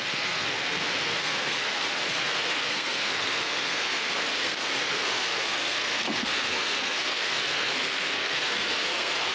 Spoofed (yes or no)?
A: yes